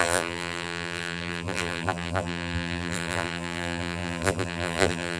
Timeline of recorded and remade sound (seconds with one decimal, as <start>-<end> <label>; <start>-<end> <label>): 0.0-5.2 remade